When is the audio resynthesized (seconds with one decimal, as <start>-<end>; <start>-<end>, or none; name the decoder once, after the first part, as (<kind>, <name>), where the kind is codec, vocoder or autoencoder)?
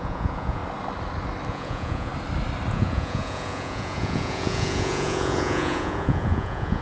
0.0-0.6 (vocoder, Vocos); 1.5-2.1; 2.7-6.8